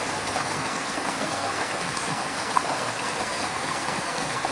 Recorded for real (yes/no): no